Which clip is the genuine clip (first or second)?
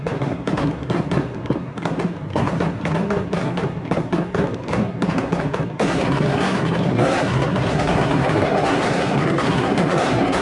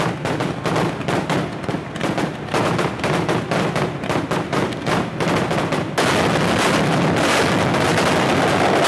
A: second